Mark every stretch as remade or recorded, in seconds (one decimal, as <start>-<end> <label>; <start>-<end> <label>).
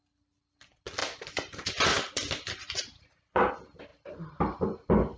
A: 0.0-1.0 recorded; 1.0-3.5 remade; 3.5-3.9 recorded; 3.9-4.6 remade; 4.6-5.2 recorded